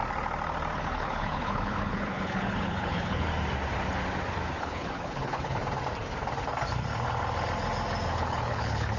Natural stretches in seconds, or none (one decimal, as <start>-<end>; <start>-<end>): 0.0-0.8; 3.3-4.6; 5.6-8.1